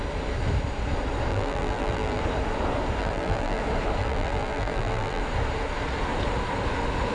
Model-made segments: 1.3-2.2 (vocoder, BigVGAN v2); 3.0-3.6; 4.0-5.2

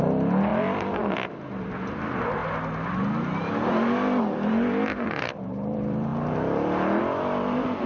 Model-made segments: 0.0-2.4 (vocoder, BigVGAN v2); 3.7-7.9

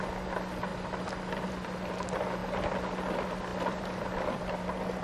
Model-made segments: 3.5-4.6 (vocoder, BigVGAN v2)

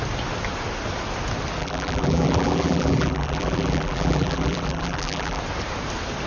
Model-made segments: 1.6-5.4 (vocoder, BigVGAN v2)

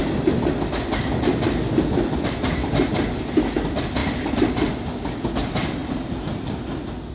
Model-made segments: 5.8-6.6 (vocoder, BigVGAN v2)

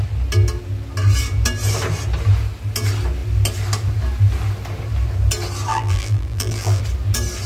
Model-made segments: 5.7-6.8 (vocoder, BigVGAN v2)